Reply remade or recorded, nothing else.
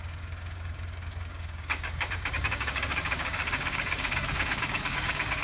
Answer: remade